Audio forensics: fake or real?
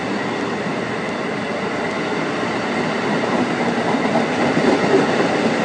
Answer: real